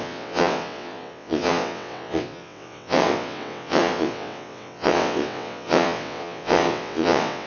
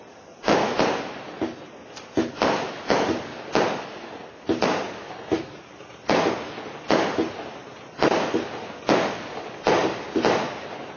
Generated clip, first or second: first